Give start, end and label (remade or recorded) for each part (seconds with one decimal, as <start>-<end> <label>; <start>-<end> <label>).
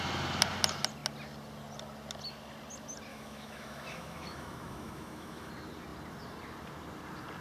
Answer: 0.0-3.1 recorded; 3.1-5.5 remade; 5.5-7.4 recorded